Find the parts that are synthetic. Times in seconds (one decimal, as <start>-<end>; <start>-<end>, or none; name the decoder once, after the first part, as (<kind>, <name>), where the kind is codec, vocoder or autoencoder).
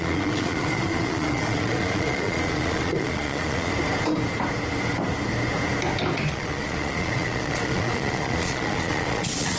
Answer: 0.0-3.7 (vocoder, Vocos); 6.3-9.6